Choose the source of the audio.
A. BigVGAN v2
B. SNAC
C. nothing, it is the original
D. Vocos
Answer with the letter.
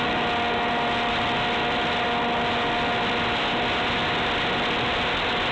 C